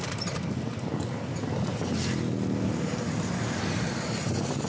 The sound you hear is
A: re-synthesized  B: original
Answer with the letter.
B